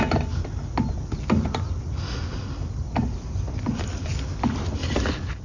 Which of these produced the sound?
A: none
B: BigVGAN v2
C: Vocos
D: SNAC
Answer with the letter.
A